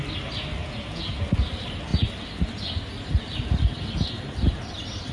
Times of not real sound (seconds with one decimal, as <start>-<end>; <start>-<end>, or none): 0.6-1.2